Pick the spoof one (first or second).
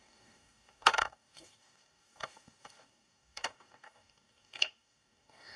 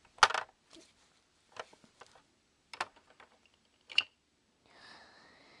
first